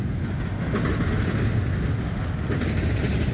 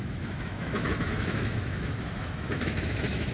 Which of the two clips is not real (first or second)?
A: second